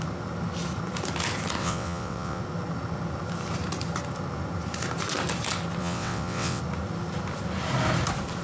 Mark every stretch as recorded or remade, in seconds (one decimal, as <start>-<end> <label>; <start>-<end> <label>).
0.0-1.6 recorded; 1.6-2.4 remade; 2.4-5.8 recorded; 5.8-6.6 remade; 6.6-8.4 recorded